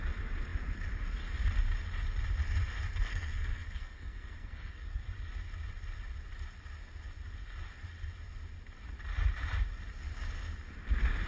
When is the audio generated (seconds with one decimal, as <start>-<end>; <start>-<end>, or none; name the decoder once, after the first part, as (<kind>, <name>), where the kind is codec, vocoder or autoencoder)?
3.1-5.0 (codec, SNAC)